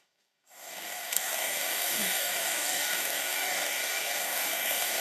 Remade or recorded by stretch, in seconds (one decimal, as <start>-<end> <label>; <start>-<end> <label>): 0.0-5.0 remade